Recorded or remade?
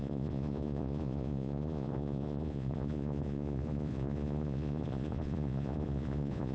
remade